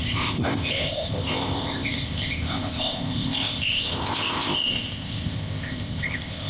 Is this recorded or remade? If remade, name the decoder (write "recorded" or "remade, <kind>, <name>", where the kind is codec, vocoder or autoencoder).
remade, codec, ZipCodec